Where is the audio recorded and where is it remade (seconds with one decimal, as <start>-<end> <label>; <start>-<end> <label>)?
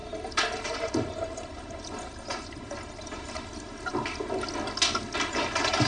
0.0-3.9 remade; 3.9-5.3 recorded; 5.3-5.9 remade